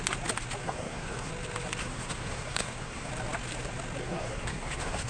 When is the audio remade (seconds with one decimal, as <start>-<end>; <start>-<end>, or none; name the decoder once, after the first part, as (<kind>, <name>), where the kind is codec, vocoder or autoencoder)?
0.6-1.3 (codec, SNAC); 1.8-3.1; 4.0-5.1

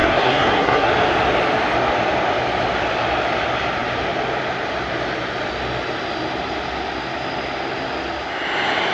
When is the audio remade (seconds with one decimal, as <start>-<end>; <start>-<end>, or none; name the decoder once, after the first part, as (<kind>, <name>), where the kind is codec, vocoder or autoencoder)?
0.0-0.9 (codec, SNAC)

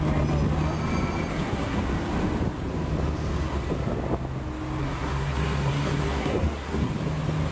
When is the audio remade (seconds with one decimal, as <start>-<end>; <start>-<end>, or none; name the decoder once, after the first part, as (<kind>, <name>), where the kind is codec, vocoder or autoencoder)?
1.3-1.8 (codec, SNAC); 4.8-6.9

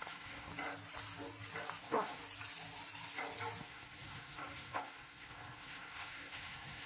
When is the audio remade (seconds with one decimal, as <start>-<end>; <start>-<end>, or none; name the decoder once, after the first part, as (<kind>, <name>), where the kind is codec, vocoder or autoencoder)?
0.0-0.5 (codec, SNAC); 1.8-2.2; 3.6-6.9

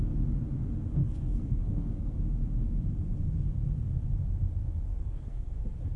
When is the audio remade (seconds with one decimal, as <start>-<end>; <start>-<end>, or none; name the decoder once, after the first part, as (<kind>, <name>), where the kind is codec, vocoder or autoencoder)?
1.0-2.2 (codec, SNAC); 4.9-5.6